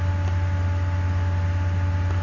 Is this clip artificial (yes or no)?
no